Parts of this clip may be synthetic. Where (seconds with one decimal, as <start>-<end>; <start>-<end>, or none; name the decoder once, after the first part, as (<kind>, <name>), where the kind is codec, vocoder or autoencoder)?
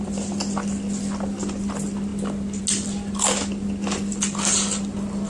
none